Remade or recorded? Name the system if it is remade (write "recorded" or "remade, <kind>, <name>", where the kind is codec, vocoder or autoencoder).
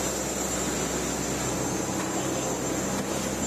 recorded